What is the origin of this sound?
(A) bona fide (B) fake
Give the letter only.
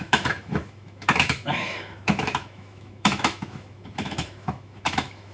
B